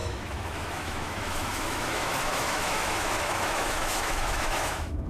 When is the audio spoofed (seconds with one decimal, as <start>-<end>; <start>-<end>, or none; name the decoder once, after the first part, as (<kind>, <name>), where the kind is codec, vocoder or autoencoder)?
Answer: 0.0-5.1 (autoencoder, DAC-VAE)

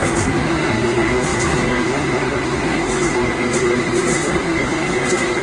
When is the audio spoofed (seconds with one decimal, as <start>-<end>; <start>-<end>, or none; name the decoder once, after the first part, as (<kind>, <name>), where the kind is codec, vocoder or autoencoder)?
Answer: 0.0-5.4 (codec, SNAC)

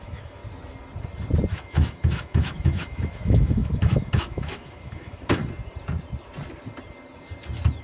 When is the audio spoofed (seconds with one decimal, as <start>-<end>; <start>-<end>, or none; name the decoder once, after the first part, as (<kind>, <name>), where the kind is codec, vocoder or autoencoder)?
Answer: 0.0-0.4 (autoencoder, DAC-VAE); 1.5-5.4

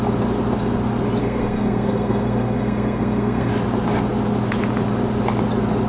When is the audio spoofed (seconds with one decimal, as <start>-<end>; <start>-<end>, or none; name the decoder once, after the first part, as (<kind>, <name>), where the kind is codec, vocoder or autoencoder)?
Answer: 1.2-3.5 (codec, SNAC)